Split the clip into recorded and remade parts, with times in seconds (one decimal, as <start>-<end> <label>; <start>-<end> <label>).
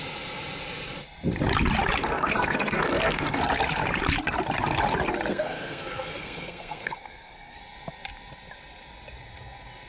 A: 0.0-2.0 recorded; 2.0-3.4 remade; 3.4-5.3 recorded; 5.3-7.6 remade; 7.6-9.9 recorded